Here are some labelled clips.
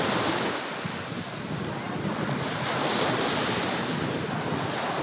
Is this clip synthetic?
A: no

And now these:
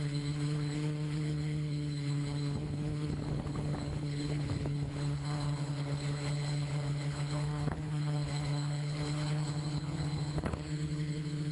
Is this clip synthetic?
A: yes